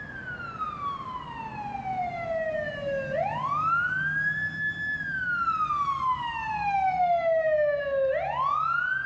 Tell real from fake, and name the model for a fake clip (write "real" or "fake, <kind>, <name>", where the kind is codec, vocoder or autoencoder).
real